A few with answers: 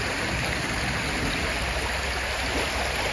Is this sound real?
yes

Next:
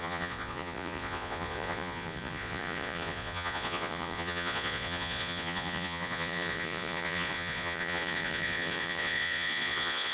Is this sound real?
no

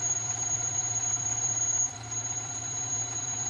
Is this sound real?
no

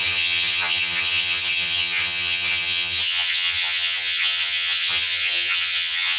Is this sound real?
no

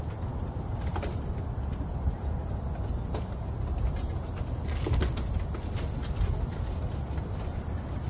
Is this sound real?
yes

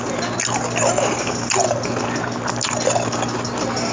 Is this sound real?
yes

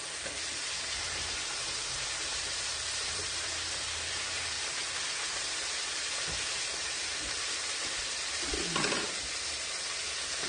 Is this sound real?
no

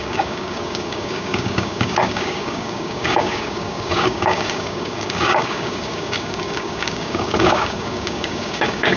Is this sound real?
no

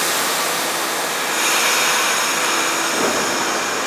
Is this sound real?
yes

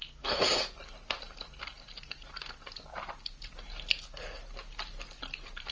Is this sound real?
yes